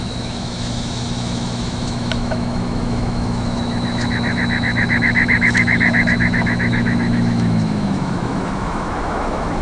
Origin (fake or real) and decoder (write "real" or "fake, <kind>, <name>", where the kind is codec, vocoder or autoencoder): fake, autoencoder, DAC-VAE